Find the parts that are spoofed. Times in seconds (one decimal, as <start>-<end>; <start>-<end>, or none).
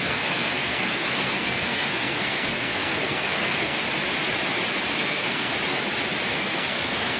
0.0-3.8; 5.0-5.5; 6.3-7.2